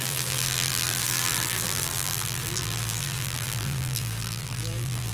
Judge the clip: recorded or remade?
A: remade